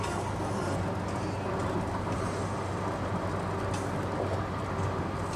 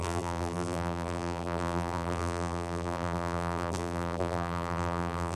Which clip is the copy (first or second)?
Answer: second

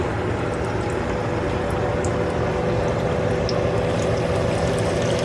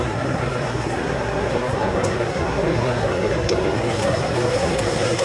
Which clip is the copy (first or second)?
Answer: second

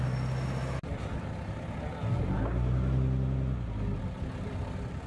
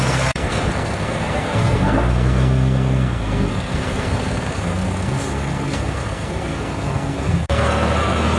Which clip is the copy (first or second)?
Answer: second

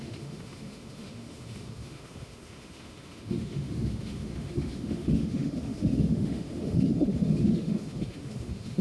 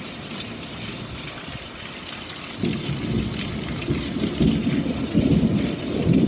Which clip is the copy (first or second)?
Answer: first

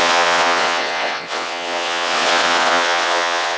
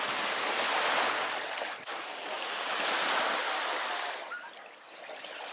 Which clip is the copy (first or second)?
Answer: first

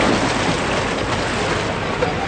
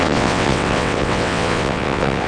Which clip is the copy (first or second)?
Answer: second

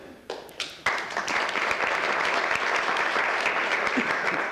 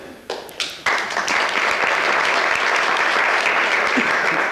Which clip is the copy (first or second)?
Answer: first